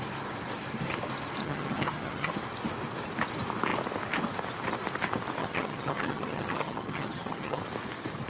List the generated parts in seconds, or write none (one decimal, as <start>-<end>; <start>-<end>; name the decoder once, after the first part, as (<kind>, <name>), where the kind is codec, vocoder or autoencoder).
1.4-2.3 (vocoder, HiFi-GAN); 5.4-7.6